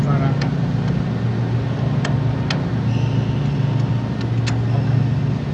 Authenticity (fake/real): real